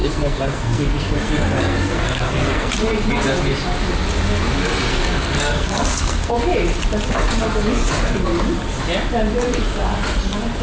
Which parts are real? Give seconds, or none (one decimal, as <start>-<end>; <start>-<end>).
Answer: 2.7-4.9; 6.4-10.6